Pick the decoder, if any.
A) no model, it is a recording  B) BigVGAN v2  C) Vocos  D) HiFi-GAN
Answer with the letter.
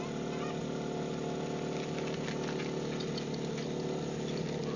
A